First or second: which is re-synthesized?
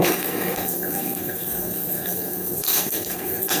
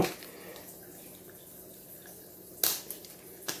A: first